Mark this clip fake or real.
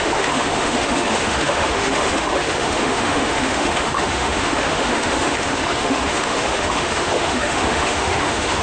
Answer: fake